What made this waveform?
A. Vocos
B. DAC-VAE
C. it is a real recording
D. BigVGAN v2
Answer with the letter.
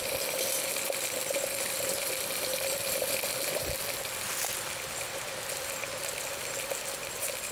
C